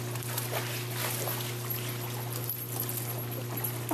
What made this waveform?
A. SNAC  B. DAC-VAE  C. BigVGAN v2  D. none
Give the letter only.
D